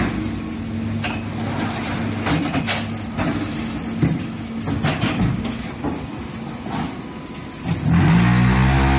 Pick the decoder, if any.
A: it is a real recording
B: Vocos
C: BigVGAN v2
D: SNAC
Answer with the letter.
A